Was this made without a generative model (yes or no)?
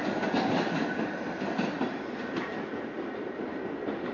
yes